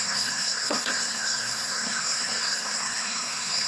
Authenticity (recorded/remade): remade